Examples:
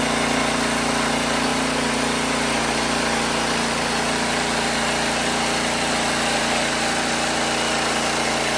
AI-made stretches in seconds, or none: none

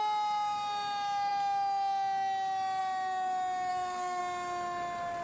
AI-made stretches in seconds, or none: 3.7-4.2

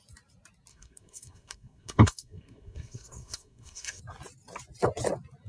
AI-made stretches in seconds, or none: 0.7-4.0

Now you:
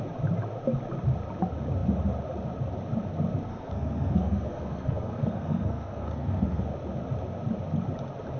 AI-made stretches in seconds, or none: 3.5-6.6

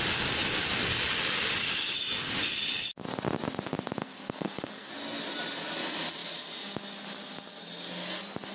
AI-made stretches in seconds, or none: 4.0-4.9

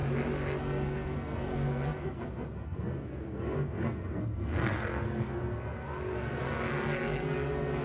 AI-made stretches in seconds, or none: 0.6-7.8

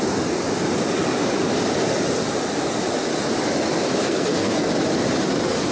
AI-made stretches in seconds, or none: 4.0-4.7

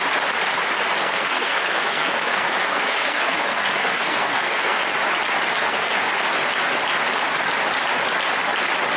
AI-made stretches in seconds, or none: 1.0-4.8; 5.6-6.1